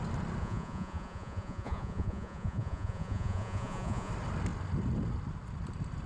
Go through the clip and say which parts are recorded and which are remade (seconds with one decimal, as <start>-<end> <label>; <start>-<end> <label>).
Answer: 0.0-0.4 recorded; 0.4-4.1 remade; 4.1-6.1 recorded